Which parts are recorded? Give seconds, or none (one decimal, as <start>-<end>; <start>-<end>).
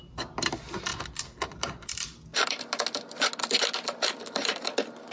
0.0-5.1